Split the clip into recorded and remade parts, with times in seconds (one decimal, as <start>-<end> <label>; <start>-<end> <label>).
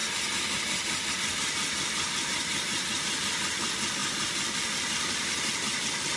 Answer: 0.0-6.2 recorded